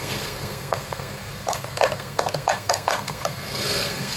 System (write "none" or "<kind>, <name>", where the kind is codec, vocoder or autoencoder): codec, SNAC